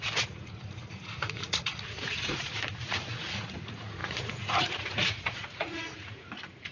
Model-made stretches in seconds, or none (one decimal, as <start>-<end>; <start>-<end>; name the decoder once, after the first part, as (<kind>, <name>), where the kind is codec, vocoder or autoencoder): 0.0-6.7 (vocoder, Vocos)